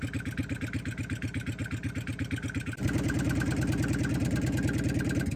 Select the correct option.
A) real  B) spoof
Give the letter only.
A